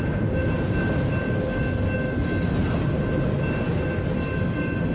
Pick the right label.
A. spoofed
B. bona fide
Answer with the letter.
B